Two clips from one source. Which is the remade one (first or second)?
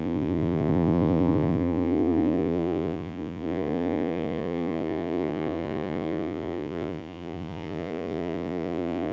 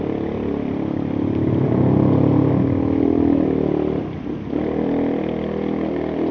first